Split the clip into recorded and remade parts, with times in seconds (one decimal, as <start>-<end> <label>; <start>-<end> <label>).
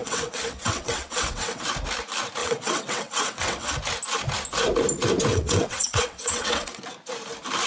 0.0-1.6 remade; 1.6-2.4 recorded; 2.4-3.7 remade; 3.7-5.3 recorded; 5.3-6.8 remade; 6.8-7.7 recorded